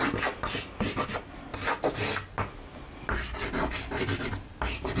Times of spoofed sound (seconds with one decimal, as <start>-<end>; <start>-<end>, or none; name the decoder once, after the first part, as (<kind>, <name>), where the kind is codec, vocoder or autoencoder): none